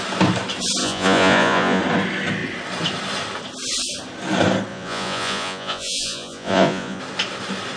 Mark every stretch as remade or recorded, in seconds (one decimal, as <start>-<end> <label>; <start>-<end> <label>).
0.0-0.8 recorded; 0.8-1.8 remade; 1.8-4.7 recorded; 4.7-7.0 remade; 7.0-7.8 recorded